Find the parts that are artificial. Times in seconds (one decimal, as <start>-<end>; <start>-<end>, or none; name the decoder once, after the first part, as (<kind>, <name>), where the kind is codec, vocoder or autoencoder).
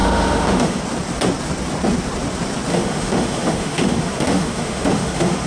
0.0-0.8 (autoencoder, DAC-VAE); 2.7-5.5